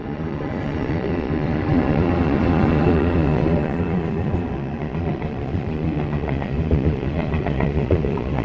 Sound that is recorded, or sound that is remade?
remade